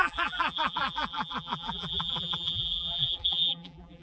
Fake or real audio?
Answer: fake